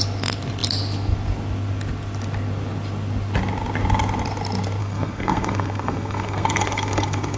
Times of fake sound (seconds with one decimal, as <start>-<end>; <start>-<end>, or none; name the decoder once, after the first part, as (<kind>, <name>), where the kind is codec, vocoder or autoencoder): 4.8-7.4 (codec, SNAC)